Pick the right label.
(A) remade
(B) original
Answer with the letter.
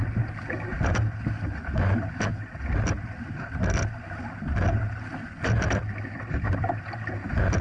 B